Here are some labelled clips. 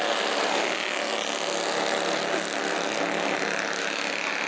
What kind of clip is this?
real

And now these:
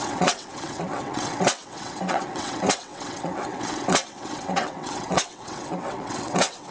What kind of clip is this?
fake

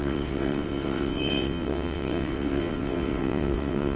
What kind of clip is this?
fake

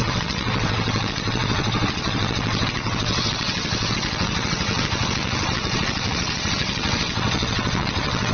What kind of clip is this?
fake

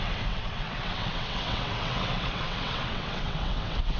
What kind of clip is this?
fake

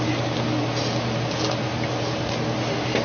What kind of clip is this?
real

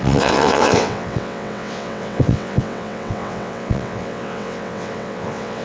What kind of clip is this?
fake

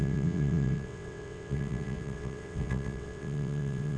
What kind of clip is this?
fake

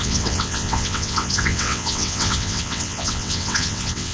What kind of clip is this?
fake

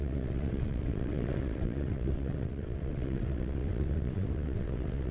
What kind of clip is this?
fake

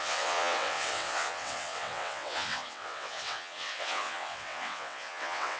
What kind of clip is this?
fake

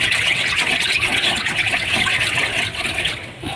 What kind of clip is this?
fake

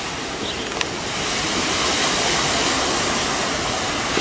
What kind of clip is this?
real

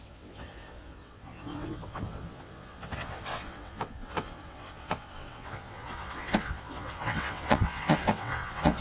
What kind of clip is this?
fake